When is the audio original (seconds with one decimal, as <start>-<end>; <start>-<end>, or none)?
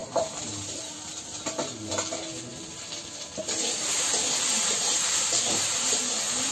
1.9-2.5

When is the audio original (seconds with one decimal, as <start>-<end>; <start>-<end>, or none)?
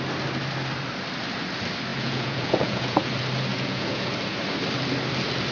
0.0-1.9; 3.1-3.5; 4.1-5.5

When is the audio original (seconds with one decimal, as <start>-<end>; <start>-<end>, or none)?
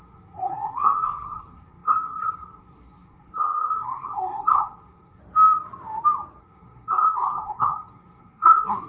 5.2-6.4